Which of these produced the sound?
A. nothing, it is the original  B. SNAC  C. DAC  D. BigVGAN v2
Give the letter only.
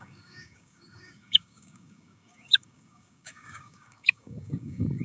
C